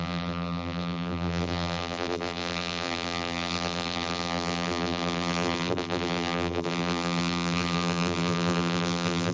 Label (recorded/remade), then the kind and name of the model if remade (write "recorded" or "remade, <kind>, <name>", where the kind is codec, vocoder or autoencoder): remade, vocoder, BigVGAN v2